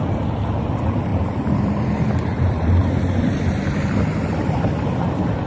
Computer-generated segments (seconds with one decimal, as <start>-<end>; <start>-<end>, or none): 1.1-2.9; 4.3-5.5